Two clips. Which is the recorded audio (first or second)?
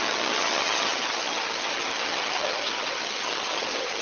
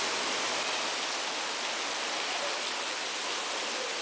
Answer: second